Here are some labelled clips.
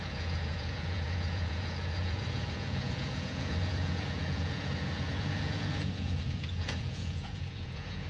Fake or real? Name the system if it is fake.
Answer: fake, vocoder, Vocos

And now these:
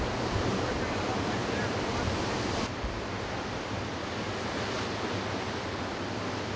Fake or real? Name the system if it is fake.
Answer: real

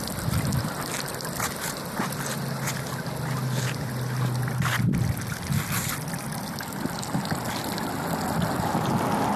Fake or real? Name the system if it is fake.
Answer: real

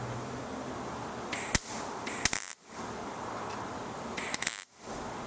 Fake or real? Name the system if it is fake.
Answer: real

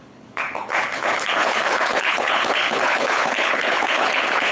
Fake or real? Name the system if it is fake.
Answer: fake, codec, HILCodec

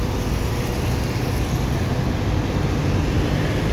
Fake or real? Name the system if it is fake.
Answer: real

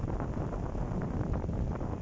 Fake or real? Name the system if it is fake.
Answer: real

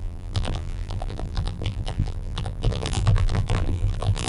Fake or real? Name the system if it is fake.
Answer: fake, vocoder, BigVGAN v2